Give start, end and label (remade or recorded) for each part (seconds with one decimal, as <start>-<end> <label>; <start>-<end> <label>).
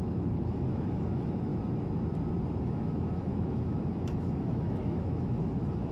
0.0-1.5 remade; 1.5-2.6 recorded; 2.6-5.9 remade